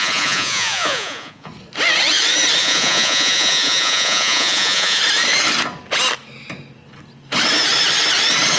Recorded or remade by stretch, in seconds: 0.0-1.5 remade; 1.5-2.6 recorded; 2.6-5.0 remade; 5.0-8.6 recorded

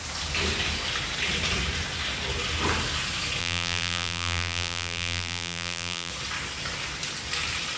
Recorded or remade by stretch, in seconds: 0.0-3.4 recorded; 3.4-6.1 remade; 6.1-7.8 recorded